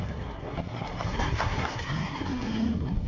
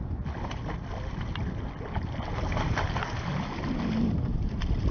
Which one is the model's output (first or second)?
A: first